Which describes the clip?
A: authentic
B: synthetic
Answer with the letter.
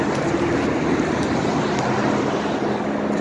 A